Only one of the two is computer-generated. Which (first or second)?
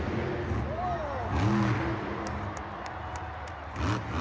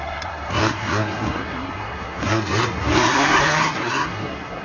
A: second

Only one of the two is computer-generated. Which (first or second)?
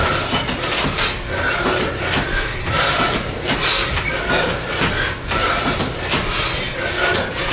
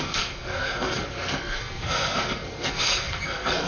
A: second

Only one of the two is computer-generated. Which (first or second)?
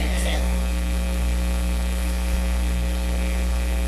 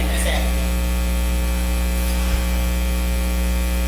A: first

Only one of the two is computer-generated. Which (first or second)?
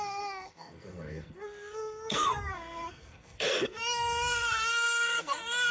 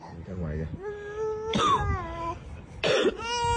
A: first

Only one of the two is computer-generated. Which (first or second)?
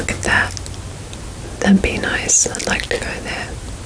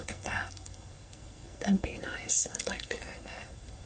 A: second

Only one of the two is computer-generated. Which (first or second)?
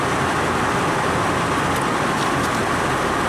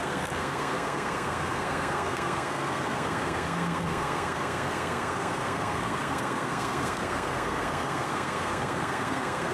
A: second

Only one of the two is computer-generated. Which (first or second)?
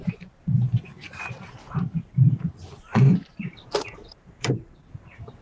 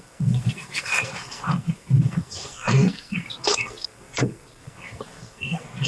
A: second